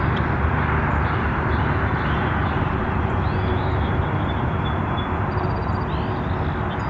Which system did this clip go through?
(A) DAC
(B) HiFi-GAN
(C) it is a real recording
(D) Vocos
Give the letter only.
C